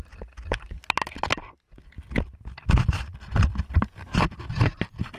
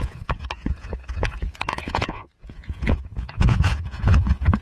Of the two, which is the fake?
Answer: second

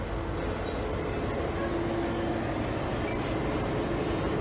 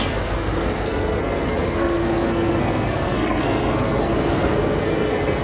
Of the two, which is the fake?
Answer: second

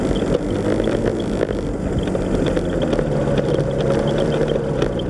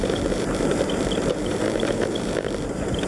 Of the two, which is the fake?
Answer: second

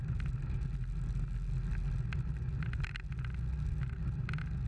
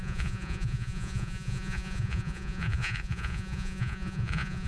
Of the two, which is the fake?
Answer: second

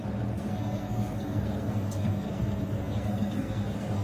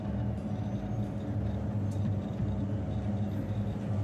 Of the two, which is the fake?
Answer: first